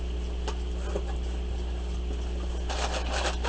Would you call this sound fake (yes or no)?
no